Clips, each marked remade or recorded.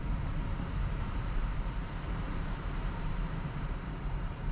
remade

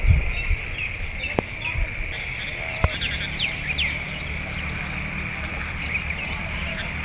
recorded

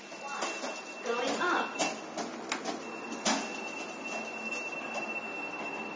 recorded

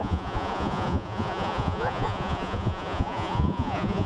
remade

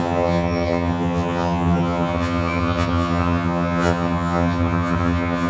remade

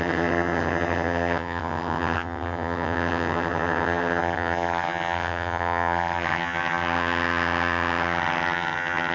remade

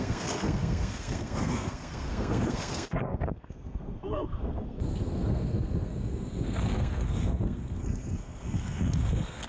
remade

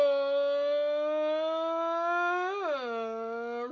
recorded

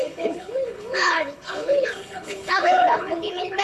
remade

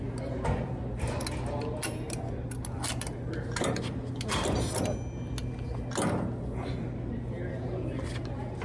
recorded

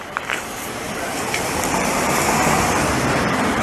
remade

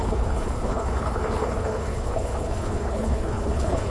remade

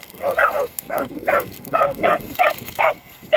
remade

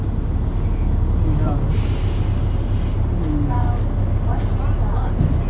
recorded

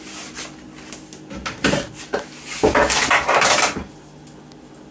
recorded